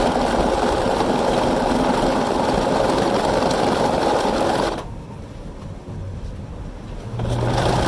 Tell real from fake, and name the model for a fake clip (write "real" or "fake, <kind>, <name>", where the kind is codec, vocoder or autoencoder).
real